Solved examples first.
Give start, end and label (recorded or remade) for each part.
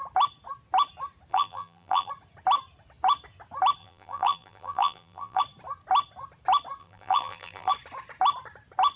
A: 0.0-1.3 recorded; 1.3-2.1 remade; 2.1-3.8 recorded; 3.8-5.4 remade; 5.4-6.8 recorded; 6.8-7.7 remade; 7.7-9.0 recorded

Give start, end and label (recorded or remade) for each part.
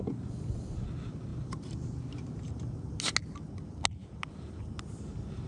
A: 0.0-1.3 recorded; 1.3-2.9 remade; 2.9-5.5 recorded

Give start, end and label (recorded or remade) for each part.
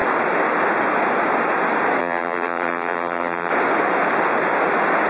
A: 0.0-2.0 recorded; 2.0-3.5 remade; 3.5-5.1 recorded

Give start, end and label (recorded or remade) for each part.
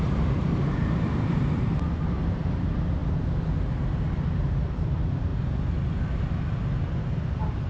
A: 0.0-3.0 remade; 3.0-4.4 recorded; 4.4-5.3 remade; 5.3-7.1 recorded; 7.1-7.7 remade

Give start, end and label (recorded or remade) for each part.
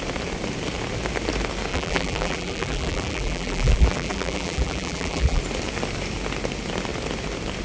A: 0.0-1.7 recorded; 1.7-5.4 remade; 5.4-7.6 recorded